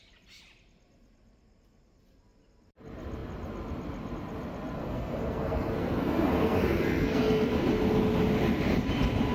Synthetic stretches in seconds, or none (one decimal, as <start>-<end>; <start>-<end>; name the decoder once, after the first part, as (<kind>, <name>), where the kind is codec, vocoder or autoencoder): 4.8-7.5 (codec, SNAC)